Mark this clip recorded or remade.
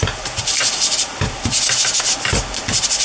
recorded